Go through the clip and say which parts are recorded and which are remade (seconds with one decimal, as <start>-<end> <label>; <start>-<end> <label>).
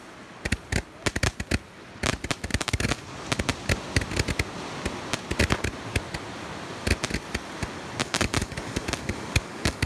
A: 0.0-2.5 recorded; 2.5-3.0 remade; 3.0-8.0 recorded; 8.0-9.9 remade